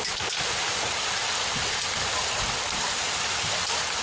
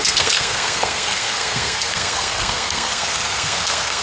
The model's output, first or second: second